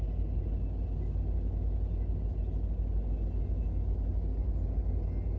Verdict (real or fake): real